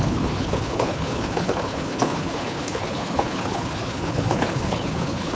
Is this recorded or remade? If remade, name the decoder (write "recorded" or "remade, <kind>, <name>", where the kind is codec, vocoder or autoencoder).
remade, codec, HILCodec